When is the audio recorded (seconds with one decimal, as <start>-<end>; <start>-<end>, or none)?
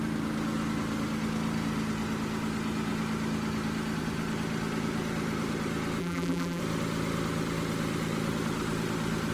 0.0-6.0; 6.6-9.3